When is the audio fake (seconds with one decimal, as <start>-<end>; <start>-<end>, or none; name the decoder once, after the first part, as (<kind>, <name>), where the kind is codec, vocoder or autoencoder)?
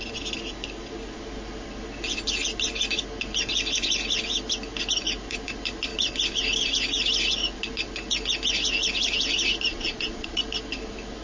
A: 9.7-10.4 (vocoder, Vocos)